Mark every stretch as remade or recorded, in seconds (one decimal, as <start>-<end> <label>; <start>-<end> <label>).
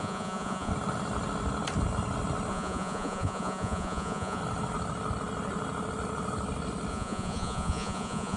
0.0-0.7 remade; 0.7-2.5 recorded; 2.5-4.4 remade; 4.4-6.9 recorded; 6.9-8.4 remade